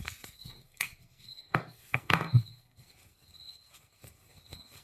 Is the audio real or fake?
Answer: fake